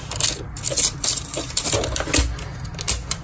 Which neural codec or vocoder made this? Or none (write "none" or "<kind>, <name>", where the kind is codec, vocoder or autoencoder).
none